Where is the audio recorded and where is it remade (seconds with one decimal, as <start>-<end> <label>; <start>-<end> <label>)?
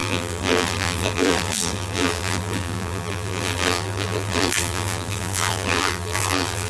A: 0.0-6.7 remade